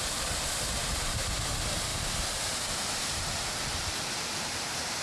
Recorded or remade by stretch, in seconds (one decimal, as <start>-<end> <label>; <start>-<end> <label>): 0.0-0.8 recorded; 0.8-1.5 remade; 1.5-1.9 recorded; 1.9-5.0 remade